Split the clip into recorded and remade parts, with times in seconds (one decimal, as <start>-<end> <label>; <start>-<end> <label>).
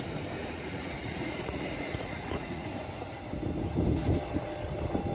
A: 0.0-0.4 recorded; 0.4-2.7 remade; 2.7-5.1 recorded